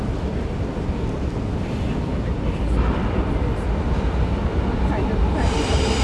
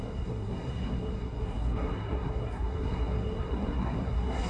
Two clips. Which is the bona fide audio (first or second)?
first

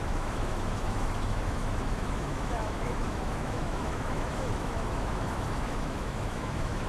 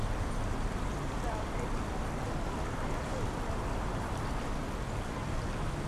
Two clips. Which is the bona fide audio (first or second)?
second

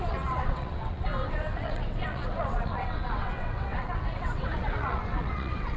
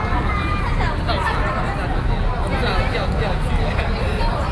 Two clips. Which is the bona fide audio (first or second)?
second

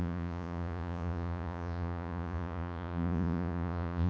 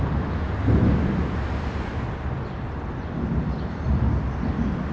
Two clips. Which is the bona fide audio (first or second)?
second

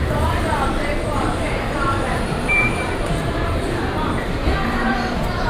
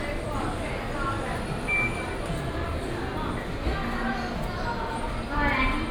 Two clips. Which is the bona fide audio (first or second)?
second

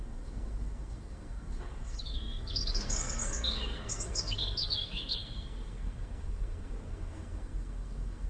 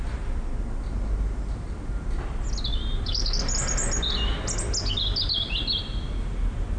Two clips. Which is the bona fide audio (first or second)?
second